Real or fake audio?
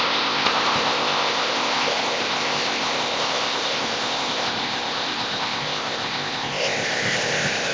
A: fake